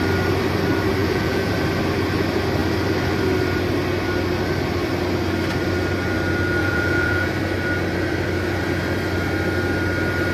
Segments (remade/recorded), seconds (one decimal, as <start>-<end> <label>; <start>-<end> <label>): 0.0-1.0 recorded; 1.0-1.5 remade; 1.5-6.6 recorded; 6.6-7.3 remade; 7.3-10.3 recorded